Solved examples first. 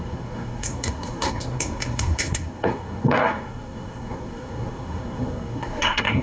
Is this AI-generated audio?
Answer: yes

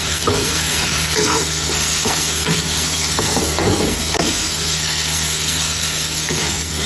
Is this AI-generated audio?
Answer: yes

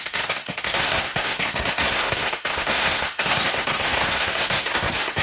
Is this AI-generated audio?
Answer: yes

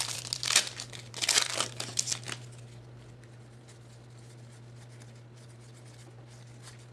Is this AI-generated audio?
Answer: no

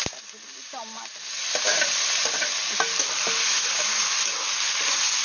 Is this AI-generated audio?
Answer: no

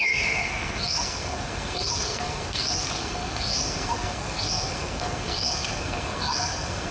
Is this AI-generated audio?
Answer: yes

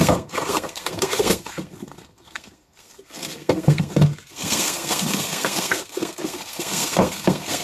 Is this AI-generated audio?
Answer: yes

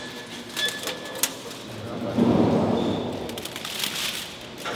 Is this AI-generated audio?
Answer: no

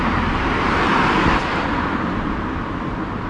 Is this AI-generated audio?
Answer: no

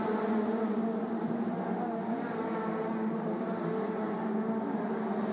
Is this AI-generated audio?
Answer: no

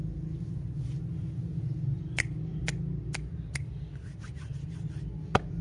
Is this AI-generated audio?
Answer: no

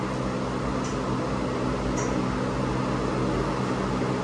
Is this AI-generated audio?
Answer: no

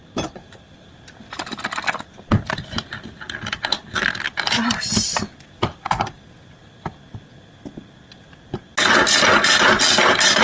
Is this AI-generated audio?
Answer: no